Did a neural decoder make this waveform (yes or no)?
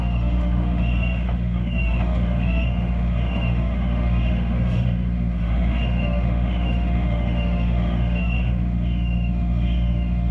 yes